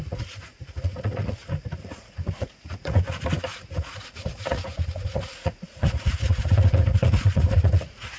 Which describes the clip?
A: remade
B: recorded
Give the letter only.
A